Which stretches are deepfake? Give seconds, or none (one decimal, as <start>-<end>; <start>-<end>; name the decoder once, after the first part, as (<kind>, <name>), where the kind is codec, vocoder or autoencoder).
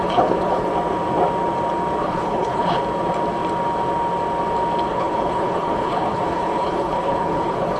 0.0-0.7 (codec, HILCodec); 2.0-2.8; 4.9-7.8